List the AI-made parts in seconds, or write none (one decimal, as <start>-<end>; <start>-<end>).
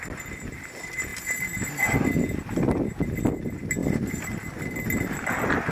none